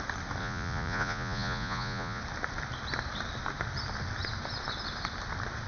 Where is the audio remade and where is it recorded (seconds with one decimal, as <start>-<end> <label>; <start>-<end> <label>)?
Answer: 0.0-0.4 recorded; 0.4-2.2 remade; 2.2-5.7 recorded